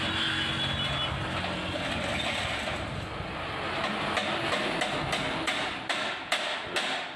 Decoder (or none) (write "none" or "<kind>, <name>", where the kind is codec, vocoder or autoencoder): none